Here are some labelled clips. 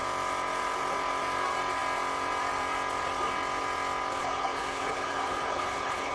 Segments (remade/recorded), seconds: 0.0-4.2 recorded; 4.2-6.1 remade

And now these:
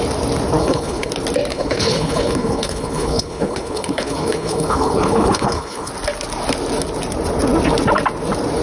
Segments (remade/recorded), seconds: 0.0-0.6 recorded; 0.6-1.1 remade; 1.1-1.5 recorded; 1.5-5.9 remade; 5.9-8.6 recorded

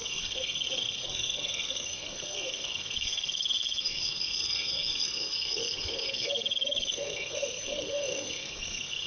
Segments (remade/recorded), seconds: 0.0-9.1 remade

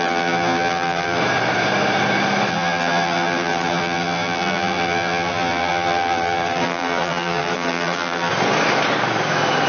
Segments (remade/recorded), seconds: 0.0-1.2 remade; 1.2-2.5 recorded; 2.5-8.3 remade; 8.3-9.7 recorded

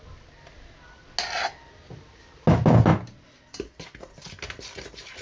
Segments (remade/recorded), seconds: 0.0-5.2 recorded

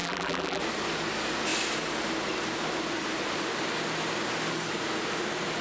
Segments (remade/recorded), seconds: 0.0-0.6 remade; 0.6-5.6 recorded

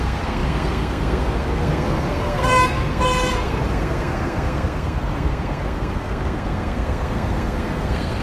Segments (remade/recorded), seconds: 0.0-8.2 remade

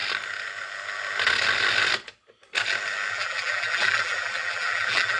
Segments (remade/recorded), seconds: 0.0-3.1 recorded; 3.1-5.2 remade